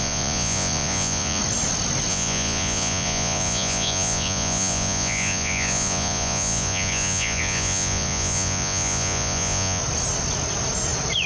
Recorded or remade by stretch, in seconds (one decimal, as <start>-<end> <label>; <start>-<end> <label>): 0.0-1.4 remade; 1.4-2.1 recorded; 2.1-9.8 remade; 9.8-11.3 recorded